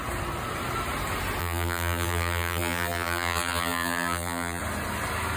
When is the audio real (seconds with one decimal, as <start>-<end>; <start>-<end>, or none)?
0.0-1.4; 4.6-5.4